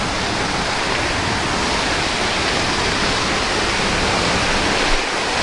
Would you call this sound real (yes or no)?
yes